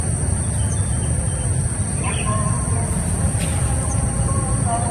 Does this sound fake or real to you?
real